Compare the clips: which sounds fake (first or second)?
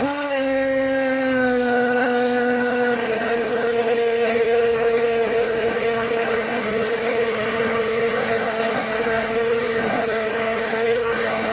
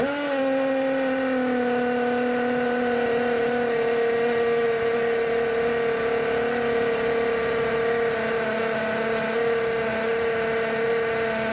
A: first